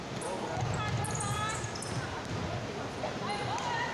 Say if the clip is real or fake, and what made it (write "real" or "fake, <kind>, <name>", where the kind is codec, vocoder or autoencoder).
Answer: real